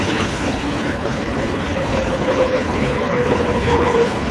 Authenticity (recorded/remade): remade